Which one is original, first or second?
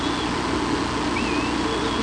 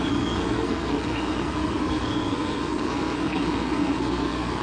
first